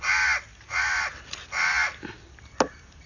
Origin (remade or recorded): recorded